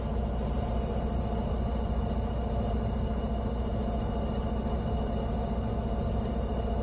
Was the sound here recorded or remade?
recorded